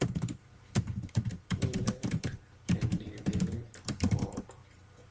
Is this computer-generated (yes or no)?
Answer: yes